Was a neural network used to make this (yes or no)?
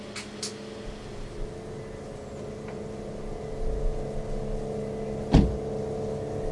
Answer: no